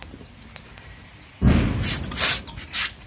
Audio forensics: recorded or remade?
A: recorded